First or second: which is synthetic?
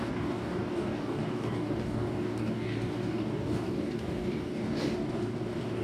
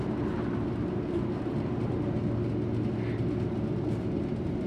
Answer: first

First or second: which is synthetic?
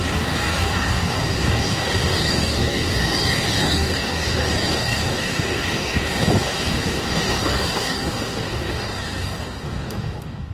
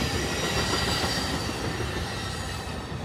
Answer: first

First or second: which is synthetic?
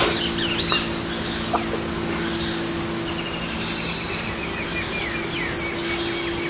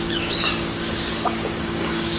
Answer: second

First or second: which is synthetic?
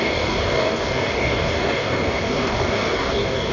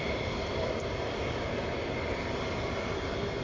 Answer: first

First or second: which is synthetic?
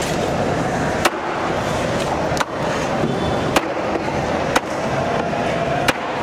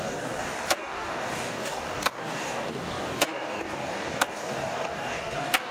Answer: second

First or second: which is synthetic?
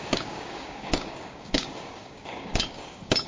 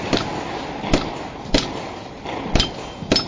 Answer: first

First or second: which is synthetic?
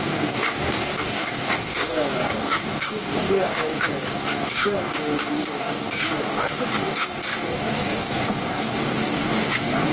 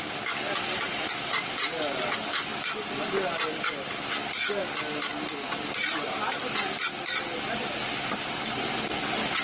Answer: first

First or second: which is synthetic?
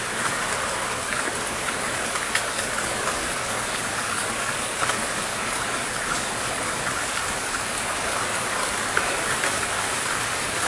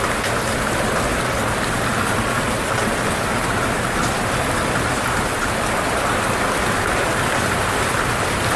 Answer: first